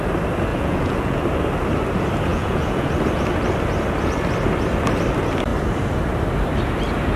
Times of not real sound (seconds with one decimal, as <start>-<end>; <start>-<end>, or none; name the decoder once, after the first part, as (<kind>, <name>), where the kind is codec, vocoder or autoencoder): 0.5-1.2 (vocoder, Vocos); 2.3-2.9